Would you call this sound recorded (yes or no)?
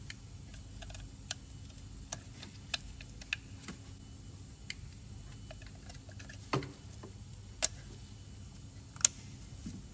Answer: yes